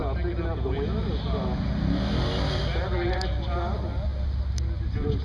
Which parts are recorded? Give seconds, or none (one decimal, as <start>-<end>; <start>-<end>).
0.0-5.2